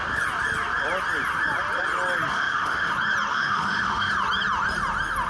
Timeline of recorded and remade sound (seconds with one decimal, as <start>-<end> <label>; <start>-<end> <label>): 0.0-2.3 recorded; 2.3-2.9 remade; 2.9-3.3 recorded; 3.3-4.1 remade; 4.1-5.3 recorded

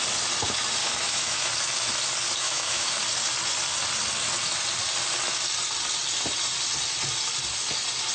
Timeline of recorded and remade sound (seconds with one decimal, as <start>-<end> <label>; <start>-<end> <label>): 0.0-0.8 recorded; 0.8-1.5 remade; 1.5-2.4 recorded; 2.4-2.9 remade; 2.9-8.1 recorded

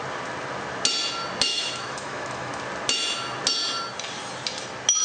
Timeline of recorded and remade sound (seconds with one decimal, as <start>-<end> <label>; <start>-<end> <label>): 0.0-1.5 recorded; 1.5-2.5 remade; 2.5-5.0 recorded

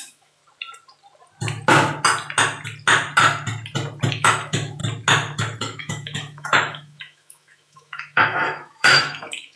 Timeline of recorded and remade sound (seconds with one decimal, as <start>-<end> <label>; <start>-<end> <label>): 0.0-0.4 remade; 0.4-4.1 recorded; 4.1-4.8 remade; 4.8-5.6 recorded; 5.6-9.6 remade

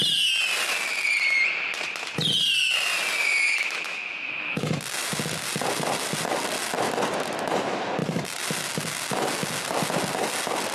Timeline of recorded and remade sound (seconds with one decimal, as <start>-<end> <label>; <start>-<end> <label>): 0.0-3.2 recorded; 3.2-4.6 remade; 4.6-10.7 recorded

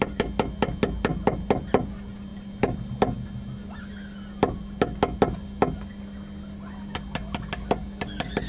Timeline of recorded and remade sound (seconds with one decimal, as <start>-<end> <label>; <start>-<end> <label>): 0.0-8.5 recorded

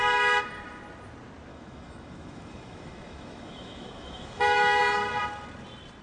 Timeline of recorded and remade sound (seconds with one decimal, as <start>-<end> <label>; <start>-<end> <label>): 0.0-1.5 recorded; 1.5-4.8 remade; 4.8-6.0 recorded

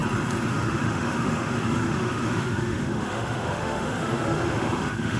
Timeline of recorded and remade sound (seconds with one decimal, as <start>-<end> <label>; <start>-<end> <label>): 0.0-0.5 recorded; 0.5-5.2 remade